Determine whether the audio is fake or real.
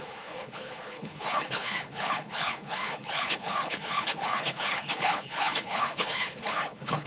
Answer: fake